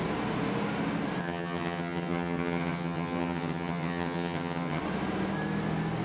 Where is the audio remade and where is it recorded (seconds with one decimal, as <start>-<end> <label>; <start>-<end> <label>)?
0.0-1.2 recorded; 1.2-4.8 remade; 4.8-6.0 recorded